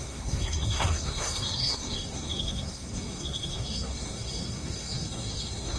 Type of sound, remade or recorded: remade